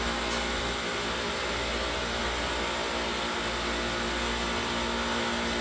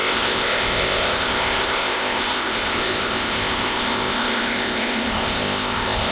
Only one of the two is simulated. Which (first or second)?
second